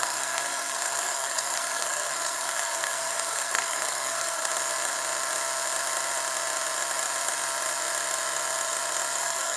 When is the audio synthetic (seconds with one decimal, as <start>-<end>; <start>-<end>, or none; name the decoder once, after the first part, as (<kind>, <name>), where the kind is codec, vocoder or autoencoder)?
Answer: 0.0-4.5 (codec, SNAC); 9.2-9.6